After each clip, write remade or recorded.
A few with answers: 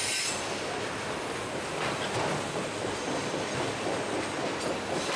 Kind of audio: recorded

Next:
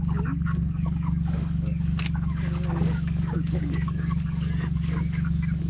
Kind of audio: remade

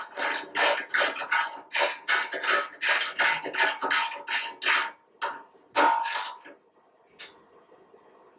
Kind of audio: recorded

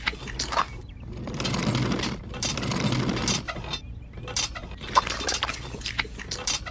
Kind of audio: recorded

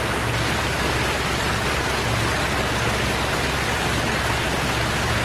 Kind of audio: recorded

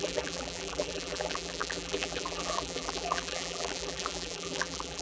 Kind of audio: remade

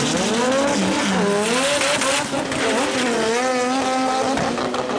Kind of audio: recorded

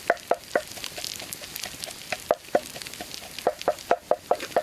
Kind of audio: recorded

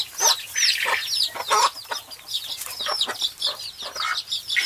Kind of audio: recorded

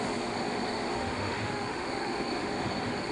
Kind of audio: remade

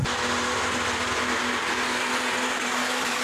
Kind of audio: recorded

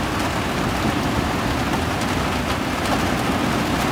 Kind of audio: recorded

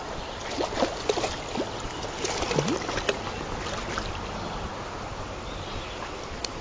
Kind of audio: recorded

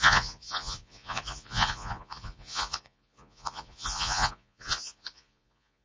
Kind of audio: remade